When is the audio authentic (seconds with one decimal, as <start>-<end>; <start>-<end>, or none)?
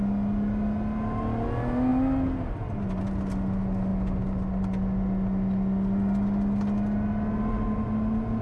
0.0-8.4